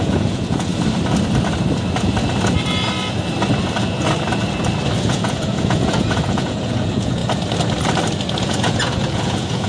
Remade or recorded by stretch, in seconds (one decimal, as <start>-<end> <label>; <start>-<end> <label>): 0.0-0.7 remade; 0.7-5.0 recorded; 5.0-7.2 remade; 7.2-8.4 recorded; 8.4-9.7 remade